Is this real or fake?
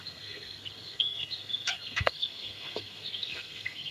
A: fake